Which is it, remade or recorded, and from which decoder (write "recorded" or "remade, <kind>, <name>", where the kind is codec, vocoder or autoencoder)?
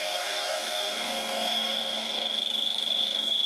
remade, codec, DAC